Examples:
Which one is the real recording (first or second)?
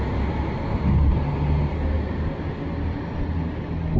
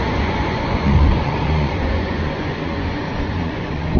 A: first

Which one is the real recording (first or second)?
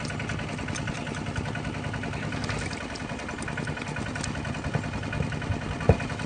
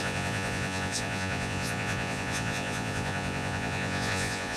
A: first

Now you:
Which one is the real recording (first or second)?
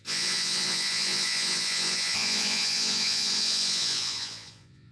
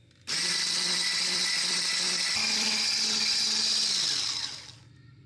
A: second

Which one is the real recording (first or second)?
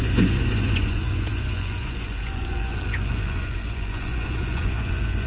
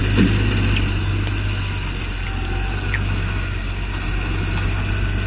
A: second